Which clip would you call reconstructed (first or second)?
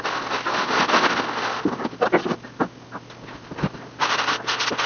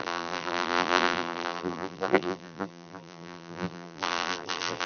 second